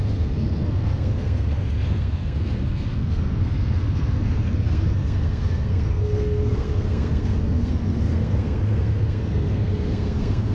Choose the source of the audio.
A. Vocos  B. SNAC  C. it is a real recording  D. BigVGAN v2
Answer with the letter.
B